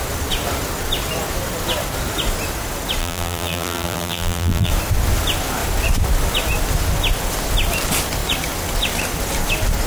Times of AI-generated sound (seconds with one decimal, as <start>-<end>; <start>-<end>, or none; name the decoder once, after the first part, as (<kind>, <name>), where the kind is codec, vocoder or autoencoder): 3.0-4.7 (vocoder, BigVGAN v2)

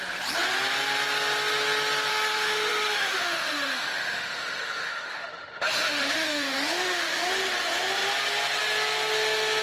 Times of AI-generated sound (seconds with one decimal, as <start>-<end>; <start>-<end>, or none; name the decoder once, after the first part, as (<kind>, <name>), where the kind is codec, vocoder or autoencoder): 2.1-7.3 (autoencoder, DAC-VAE)

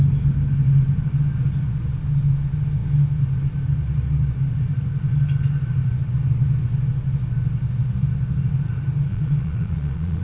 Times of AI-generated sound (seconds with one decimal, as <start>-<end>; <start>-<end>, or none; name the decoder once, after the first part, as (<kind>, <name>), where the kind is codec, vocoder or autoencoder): 9.1-10.2 (vocoder, Vocos)

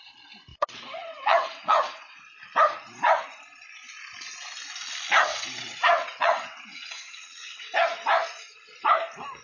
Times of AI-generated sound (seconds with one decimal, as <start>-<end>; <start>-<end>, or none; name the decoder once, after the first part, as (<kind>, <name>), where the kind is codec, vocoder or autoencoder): 0.5-2.2 (vocoder, WaveNeXt); 5.3-7.7

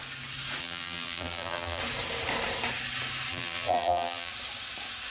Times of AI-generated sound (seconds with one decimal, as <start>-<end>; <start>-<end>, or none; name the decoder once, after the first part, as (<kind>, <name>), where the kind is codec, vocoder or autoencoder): 0.6-1.8 (vocoder, BigVGAN v2); 3.3-4.3